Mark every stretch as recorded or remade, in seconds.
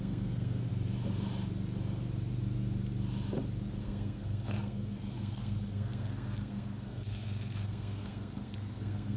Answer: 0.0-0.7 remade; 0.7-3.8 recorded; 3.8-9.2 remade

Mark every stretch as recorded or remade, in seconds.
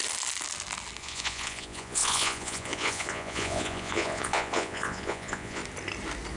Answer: 0.0-1.0 recorded; 1.0-5.6 remade; 5.6-6.4 recorded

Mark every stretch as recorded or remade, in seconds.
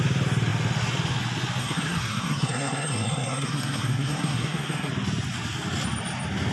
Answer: 0.0-1.6 recorded; 1.6-4.9 remade; 4.9-6.5 recorded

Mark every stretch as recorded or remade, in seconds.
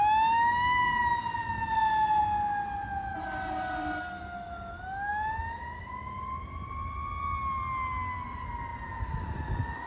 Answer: 0.0-9.9 recorded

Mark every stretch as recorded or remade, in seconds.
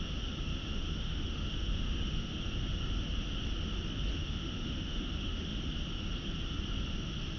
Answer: 0.0-0.5 recorded; 0.5-2.4 remade; 2.4-4.1 recorded; 4.1-5.6 remade; 5.6-7.4 recorded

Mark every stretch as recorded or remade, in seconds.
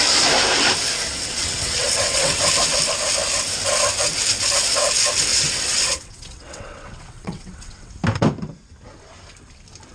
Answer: 0.0-1.1 recorded; 1.1-2.4 remade; 2.4-5.3 recorded; 5.3-7.9 remade; 7.9-9.9 recorded